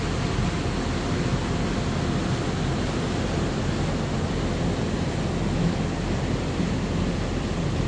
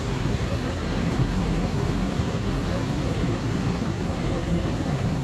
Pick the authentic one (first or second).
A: first